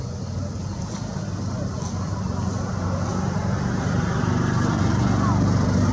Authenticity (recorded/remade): recorded